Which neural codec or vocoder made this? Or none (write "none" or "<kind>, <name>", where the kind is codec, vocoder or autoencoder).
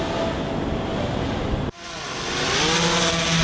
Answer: none